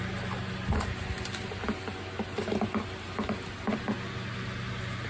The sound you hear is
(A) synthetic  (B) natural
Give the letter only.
B